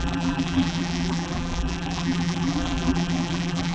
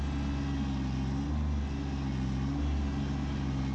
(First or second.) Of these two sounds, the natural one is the second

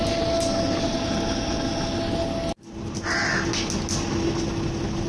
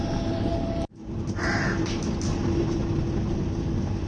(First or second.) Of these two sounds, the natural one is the first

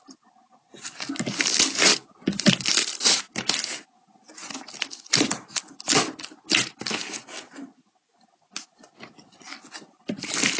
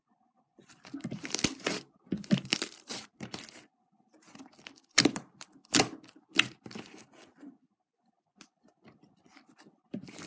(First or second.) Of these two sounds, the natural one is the first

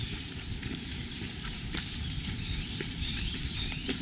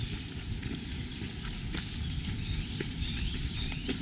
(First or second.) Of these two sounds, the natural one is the second